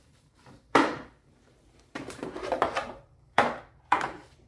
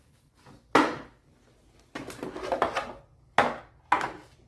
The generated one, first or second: first